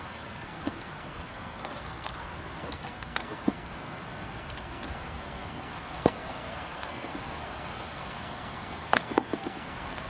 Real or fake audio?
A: fake